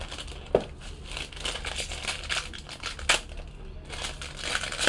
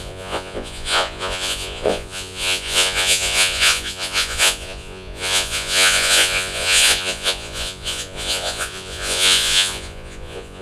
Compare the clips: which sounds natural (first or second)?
first